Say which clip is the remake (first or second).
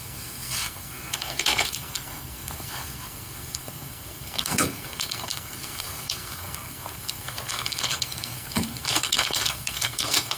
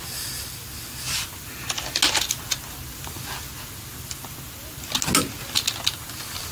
first